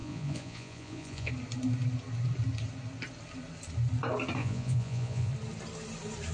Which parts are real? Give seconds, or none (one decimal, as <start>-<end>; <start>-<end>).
1.3-4.4; 5.3-6.3